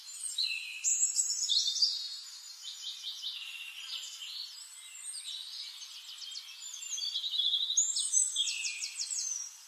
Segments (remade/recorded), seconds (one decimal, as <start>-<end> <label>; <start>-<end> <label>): 0.0-9.7 recorded